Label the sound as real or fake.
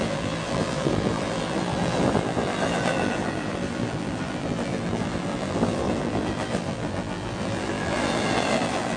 fake